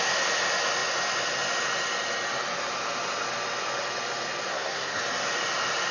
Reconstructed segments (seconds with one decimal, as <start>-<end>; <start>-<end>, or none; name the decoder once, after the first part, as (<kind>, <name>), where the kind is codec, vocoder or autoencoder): 4.5-5.0 (codec, SNAC)